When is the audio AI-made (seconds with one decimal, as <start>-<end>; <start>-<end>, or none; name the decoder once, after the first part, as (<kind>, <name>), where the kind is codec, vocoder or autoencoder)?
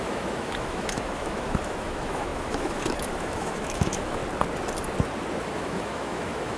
0.0-4.2 (autoencoder, DAC-VAE); 5.4-6.6